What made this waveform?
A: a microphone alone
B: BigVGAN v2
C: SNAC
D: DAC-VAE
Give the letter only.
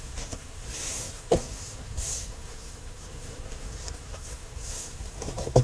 C